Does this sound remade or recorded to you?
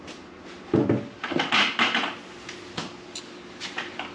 recorded